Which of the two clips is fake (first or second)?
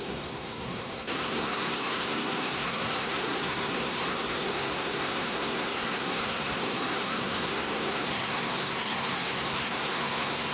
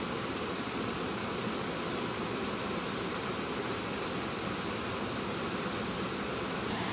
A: first